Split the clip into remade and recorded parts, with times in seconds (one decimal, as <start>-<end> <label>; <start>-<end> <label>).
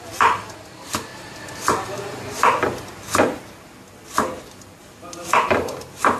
0.0-6.2 recorded